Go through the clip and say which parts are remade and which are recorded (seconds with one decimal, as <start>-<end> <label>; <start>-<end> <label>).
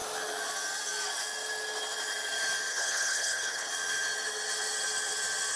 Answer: 0.0-2.7 recorded; 2.7-3.7 remade; 3.7-5.6 recorded